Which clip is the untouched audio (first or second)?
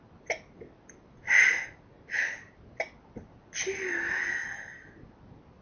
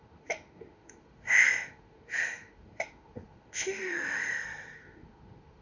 first